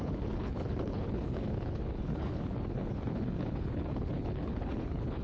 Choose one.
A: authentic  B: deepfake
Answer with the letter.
B